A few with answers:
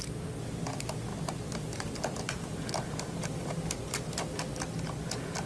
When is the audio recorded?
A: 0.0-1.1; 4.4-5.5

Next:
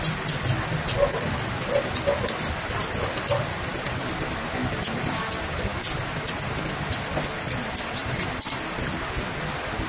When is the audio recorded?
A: 0.0-9.9

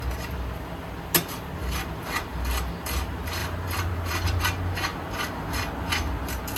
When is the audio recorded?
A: 0.0-3.4; 4.4-6.6

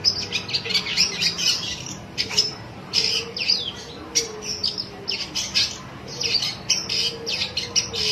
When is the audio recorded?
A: 0.0-0.9; 2.9-8.1

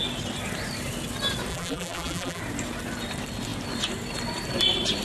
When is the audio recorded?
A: 0.0-1.5; 2.4-5.0

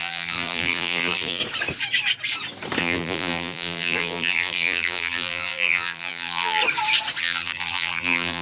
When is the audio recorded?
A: 1.4-2.8; 6.6-7.2

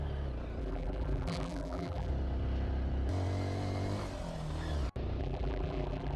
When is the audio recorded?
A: 0.0-0.6; 2.1-5.2